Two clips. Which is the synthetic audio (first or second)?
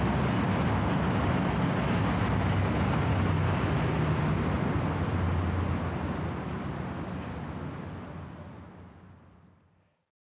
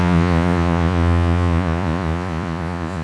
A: second